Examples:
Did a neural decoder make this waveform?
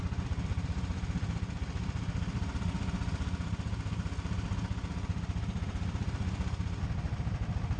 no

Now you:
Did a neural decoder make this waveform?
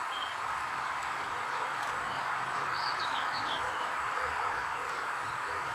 yes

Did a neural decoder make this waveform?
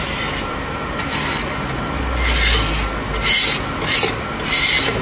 no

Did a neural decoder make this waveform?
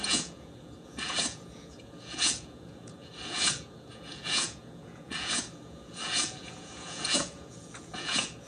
yes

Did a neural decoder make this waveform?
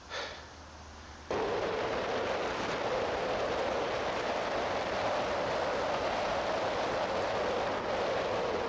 no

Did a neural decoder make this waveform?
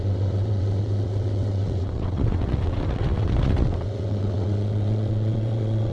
yes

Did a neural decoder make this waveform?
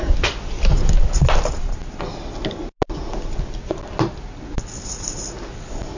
no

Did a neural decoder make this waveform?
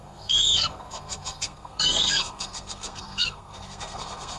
yes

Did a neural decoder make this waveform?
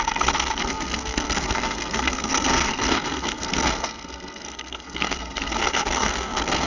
yes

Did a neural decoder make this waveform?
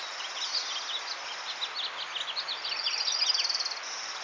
no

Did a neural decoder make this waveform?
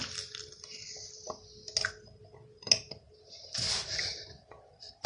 no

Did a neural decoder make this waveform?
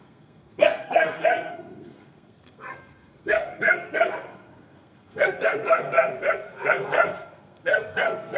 yes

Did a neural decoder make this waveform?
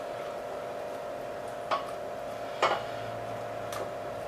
no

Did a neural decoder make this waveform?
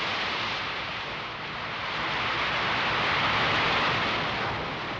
no